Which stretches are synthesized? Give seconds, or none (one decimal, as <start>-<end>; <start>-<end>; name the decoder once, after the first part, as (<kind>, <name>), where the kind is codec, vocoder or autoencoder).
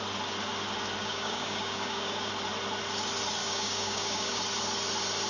1.0-2.3 (codec, DAC); 3.4-4.4